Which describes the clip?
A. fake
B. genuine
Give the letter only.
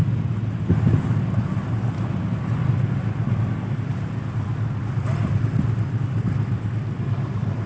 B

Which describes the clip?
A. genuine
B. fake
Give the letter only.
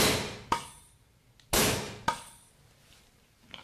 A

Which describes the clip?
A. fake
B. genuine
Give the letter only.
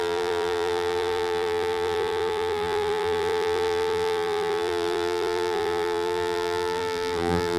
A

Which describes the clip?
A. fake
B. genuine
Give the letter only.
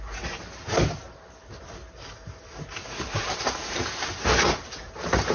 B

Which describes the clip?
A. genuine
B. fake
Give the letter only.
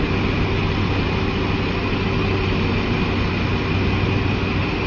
A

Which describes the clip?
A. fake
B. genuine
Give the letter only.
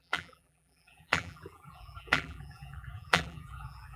A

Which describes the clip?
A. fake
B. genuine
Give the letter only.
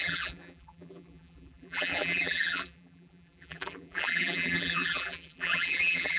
A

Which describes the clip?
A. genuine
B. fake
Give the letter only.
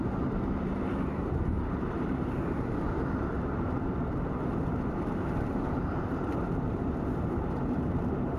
B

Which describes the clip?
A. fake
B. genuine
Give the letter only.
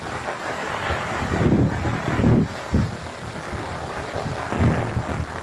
B